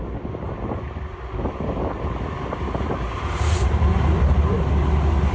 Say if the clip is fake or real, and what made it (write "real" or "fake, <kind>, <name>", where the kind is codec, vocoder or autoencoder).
real